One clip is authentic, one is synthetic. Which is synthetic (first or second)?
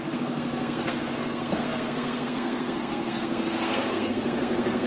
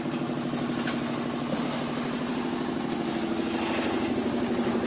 first